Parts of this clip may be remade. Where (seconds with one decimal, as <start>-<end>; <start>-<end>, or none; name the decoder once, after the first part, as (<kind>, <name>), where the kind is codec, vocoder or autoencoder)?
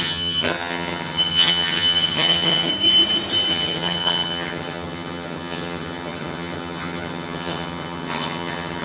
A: 0.0-2.7 (vocoder, HiFi-GAN); 3.5-8.8